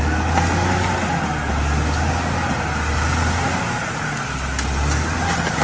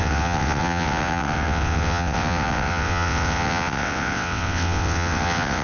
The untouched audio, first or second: first